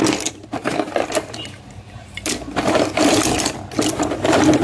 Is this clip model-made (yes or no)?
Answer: no